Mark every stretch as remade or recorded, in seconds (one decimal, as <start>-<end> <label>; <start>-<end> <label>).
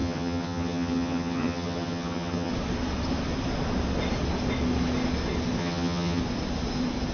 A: 0.0-2.5 remade; 2.5-5.6 recorded; 5.6-6.2 remade; 6.2-7.1 recorded